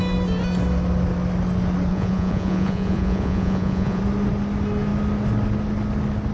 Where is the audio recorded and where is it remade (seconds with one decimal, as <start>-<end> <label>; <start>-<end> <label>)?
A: 0.0-1.9 recorded; 1.9-4.0 remade; 4.0-6.3 recorded